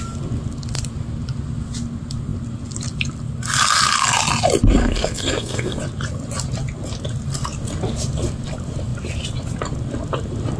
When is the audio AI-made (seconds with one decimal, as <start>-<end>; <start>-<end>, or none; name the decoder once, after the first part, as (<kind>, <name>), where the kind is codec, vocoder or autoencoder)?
4.8-5.8 (codec, SNAC)